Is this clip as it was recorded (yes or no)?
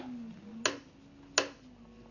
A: yes